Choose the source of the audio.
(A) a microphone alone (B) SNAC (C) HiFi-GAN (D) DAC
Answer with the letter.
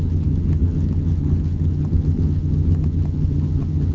C